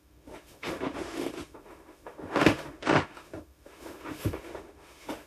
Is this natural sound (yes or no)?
no